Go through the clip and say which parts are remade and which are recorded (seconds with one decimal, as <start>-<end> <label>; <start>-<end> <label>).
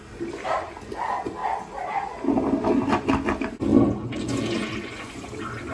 0.0-3.7 recorded; 3.7-5.7 remade